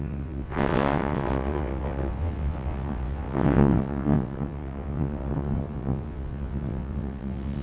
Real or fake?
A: fake